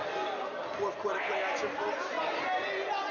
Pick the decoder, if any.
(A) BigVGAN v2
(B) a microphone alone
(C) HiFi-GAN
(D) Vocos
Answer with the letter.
B